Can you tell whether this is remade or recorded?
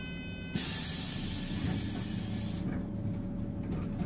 recorded